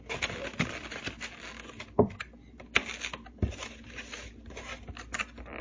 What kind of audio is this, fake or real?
real